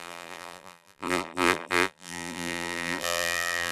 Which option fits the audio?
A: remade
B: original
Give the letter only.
A